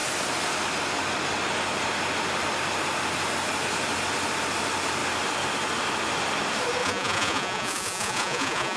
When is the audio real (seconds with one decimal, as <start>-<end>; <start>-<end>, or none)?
0.0-6.8

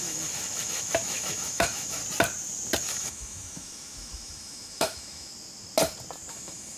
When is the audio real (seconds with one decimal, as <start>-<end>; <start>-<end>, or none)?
2.0-2.8; 5.3-6.3

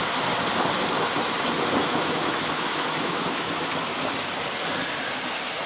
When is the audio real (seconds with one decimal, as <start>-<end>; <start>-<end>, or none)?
0.0-1.8; 3.5-5.7